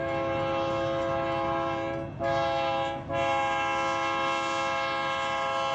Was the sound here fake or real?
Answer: real